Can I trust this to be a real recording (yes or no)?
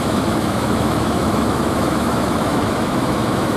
no